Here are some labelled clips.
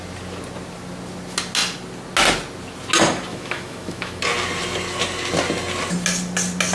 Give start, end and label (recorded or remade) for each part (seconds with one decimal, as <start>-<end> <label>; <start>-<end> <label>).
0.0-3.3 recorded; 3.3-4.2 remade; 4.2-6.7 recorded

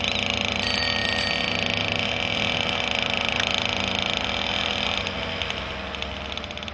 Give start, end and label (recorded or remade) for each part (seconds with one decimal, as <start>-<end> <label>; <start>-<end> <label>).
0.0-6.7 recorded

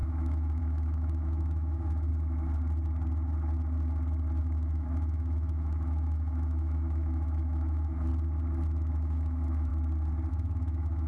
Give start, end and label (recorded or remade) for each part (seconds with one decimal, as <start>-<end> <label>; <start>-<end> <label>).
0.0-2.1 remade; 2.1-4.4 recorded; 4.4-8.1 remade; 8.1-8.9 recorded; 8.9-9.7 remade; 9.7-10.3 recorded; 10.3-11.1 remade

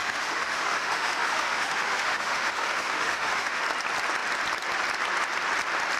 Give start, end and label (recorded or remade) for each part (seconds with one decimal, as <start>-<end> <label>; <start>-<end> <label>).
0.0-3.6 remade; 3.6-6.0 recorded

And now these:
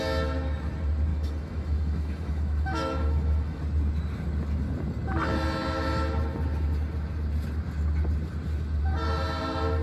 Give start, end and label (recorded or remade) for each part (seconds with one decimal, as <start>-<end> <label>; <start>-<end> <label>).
0.0-1.1 recorded; 1.1-3.6 remade; 3.6-9.8 recorded

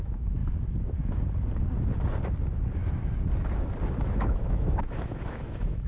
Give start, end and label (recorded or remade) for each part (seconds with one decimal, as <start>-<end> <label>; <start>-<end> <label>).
0.0-0.4 remade; 0.4-3.9 recorded; 3.9-5.9 remade

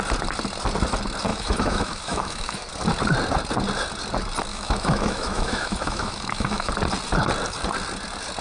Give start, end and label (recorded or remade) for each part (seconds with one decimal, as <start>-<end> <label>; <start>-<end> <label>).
0.0-1.3 recorded; 1.3-2.7 remade; 2.7-4.5 recorded; 4.5-6.7 remade; 6.7-8.4 recorded

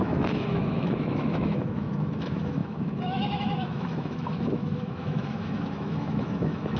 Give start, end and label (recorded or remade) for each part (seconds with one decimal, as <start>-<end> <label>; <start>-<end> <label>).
0.0-6.8 remade